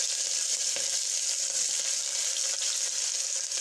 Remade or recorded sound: recorded